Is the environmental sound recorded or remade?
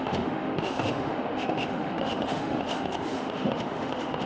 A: remade